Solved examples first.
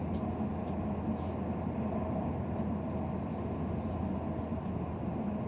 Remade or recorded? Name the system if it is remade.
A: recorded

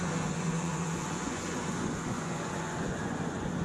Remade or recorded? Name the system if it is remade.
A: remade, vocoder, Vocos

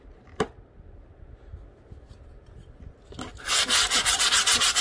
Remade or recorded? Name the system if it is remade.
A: recorded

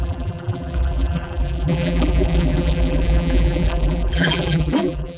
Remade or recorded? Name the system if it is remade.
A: remade, vocoder, BigVGAN v2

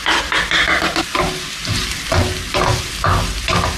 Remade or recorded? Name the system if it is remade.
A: recorded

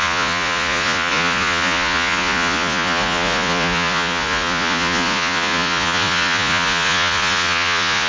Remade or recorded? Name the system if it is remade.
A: remade, vocoder, Vocos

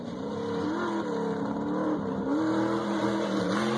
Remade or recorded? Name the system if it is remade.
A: recorded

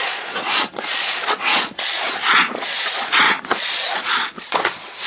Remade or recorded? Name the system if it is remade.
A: remade, vocoder, Vocos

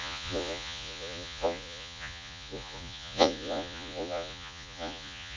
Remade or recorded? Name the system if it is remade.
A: remade, vocoder, Vocos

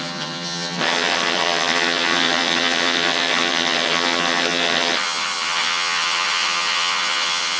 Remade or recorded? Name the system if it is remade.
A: remade, vocoder, HiFi-GAN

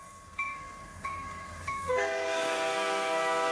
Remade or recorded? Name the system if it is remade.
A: remade, codec, SNAC